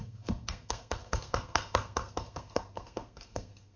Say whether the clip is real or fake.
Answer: fake